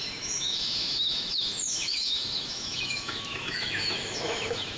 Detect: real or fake fake